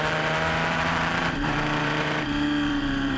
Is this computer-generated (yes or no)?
yes